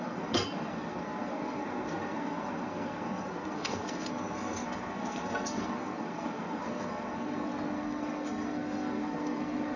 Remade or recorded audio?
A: remade